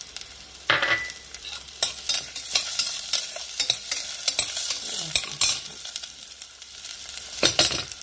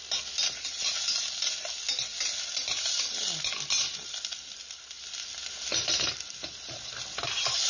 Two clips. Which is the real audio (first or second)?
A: second